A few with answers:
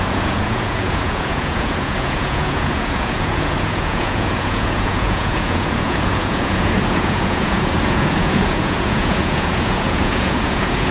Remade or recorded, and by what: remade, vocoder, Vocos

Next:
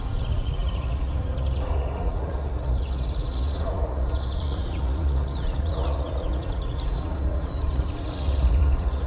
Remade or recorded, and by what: remade, vocoder, Vocos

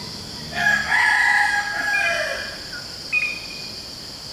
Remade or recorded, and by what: recorded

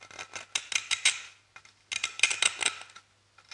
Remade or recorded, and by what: recorded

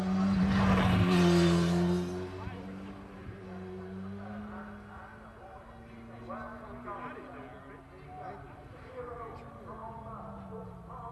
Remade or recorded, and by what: recorded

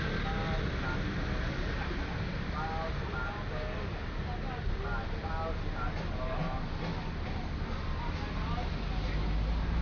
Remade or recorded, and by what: recorded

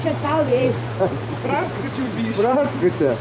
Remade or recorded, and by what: remade, vocoder, Vocos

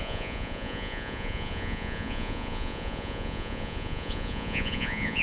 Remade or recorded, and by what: remade, vocoder, Vocos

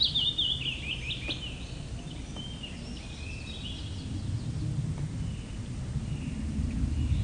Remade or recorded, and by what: recorded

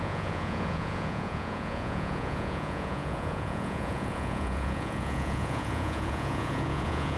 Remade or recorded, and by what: remade, vocoder, Vocos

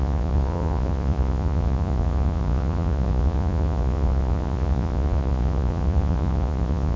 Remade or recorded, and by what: remade, vocoder, Vocos